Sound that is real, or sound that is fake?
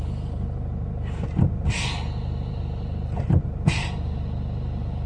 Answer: real